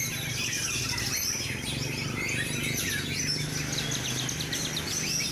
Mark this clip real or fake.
real